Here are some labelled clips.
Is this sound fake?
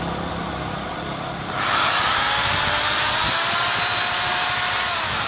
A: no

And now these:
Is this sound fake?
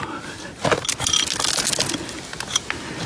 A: no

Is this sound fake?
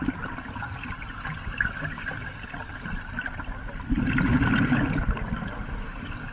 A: no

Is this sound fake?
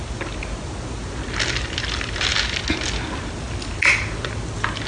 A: no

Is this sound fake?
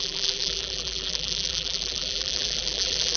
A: yes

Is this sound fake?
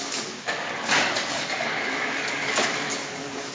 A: yes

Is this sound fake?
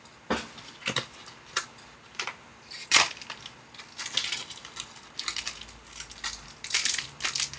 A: no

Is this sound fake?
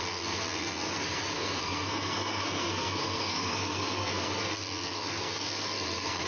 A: yes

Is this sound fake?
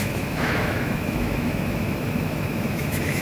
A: yes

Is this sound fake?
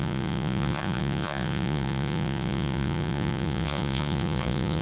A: yes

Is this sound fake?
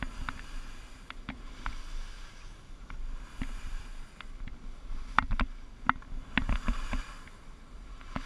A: no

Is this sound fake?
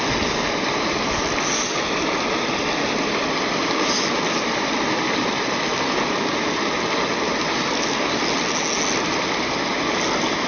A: no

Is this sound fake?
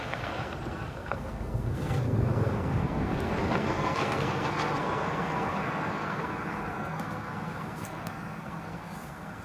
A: yes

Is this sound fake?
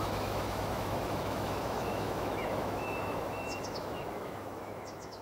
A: yes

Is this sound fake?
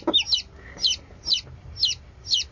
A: no